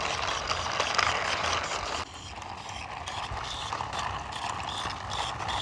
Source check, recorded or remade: recorded